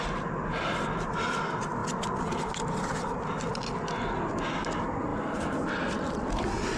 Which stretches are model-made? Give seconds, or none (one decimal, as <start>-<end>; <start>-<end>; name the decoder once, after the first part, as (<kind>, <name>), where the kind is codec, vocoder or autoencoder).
1.8-4.3 (vocoder, BigVGAN v2)